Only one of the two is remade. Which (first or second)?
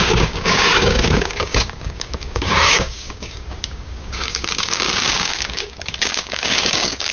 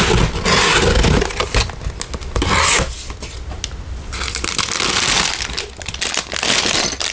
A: first